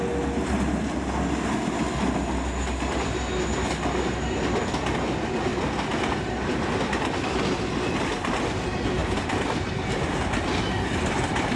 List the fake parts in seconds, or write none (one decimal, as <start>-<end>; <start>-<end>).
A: 5.5-6.3; 9.0-10.4